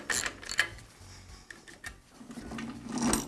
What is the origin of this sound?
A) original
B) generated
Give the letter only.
A